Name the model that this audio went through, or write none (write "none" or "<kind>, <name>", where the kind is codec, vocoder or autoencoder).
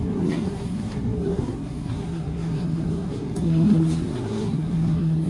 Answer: codec, SNAC